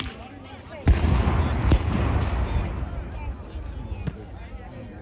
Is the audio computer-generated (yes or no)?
no